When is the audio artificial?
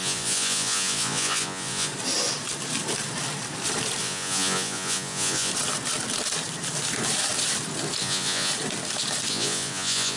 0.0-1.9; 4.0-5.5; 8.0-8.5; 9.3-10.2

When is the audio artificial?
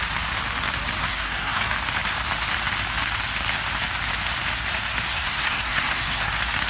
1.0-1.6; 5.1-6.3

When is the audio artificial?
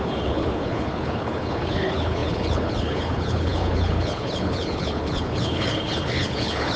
0.0-6.8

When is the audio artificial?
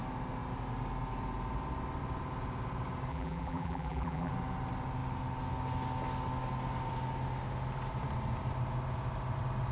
3.1-4.3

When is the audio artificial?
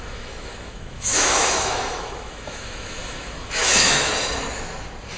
0.0-4.1